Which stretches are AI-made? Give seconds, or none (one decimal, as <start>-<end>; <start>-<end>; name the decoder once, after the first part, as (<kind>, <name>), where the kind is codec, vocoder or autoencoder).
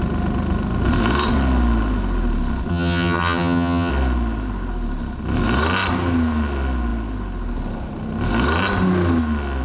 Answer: 2.7-3.9 (vocoder, HiFi-GAN)